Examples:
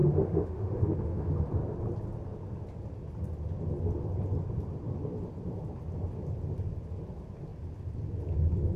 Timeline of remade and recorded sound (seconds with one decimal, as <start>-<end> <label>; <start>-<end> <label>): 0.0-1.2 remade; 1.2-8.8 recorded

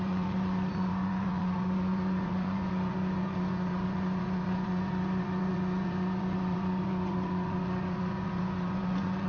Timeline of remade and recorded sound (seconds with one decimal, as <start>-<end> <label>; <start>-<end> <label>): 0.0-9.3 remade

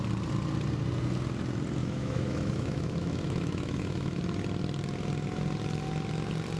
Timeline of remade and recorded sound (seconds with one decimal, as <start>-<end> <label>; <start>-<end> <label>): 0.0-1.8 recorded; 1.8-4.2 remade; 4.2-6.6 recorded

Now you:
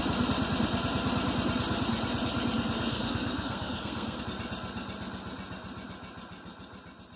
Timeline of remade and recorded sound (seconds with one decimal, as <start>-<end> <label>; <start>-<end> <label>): 0.0-2.9 recorded; 2.9-4.2 remade; 4.2-7.2 recorded

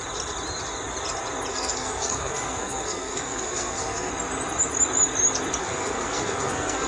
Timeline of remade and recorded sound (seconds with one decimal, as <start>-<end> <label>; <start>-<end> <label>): 0.0-1.5 recorded; 1.5-4.1 remade; 4.1-5.6 recorded; 5.6-6.9 remade

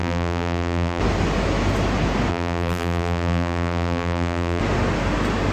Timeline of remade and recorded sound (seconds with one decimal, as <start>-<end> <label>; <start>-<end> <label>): 0.0-1.0 remade; 1.0-2.3 recorded; 2.3-4.6 remade; 4.6-5.5 recorded

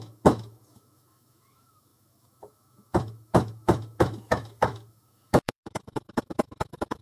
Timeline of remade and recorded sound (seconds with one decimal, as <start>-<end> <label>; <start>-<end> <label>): 0.0-7.0 remade

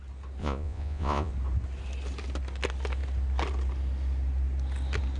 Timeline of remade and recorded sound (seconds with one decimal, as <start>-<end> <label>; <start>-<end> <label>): 0.0-0.4 recorded; 0.4-1.3 remade; 1.3-5.2 recorded